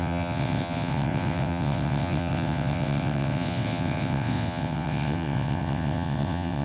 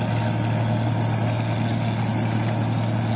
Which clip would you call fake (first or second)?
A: first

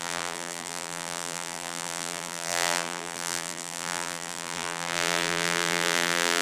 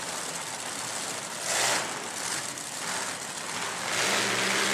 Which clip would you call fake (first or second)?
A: first